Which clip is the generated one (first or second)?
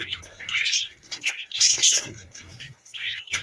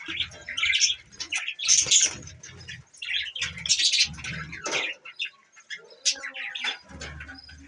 first